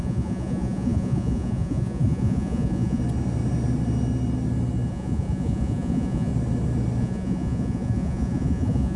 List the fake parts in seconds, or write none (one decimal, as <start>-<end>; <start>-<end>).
0.0-3.0; 4.9-6.3; 7.0-9.0